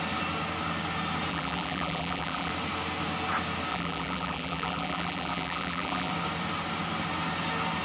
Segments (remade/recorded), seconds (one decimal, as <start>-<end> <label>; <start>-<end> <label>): 0.0-1.3 recorded; 1.3-2.5 remade; 2.5-3.7 recorded; 3.7-6.1 remade; 6.1-7.8 recorded